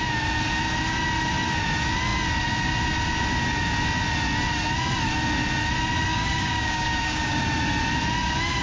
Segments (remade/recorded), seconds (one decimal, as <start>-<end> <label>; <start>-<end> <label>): 0.0-6.1 recorded; 6.1-7.4 remade; 7.4-8.6 recorded